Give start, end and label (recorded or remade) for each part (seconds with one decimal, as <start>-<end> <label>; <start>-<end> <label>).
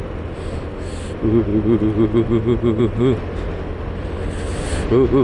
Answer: 0.0-5.2 recorded